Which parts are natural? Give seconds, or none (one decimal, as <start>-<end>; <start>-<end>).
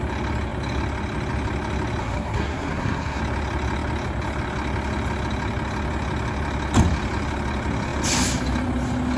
0.0-2.0; 3.2-9.2